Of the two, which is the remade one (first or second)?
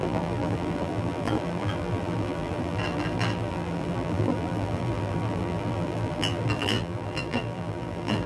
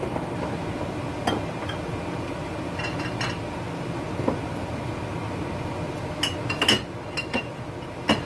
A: first